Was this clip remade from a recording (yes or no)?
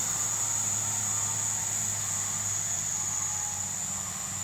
no